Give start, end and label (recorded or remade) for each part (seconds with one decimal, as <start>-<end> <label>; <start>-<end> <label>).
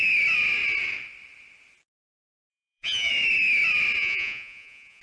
0.0-2.5 recorded; 2.5-3.1 remade; 3.1-4.0 recorded; 4.0-5.0 remade